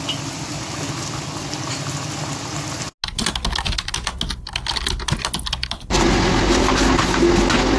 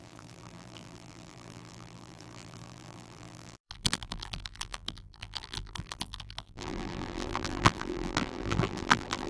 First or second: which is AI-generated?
second